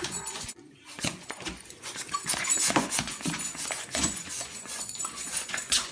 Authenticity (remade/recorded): remade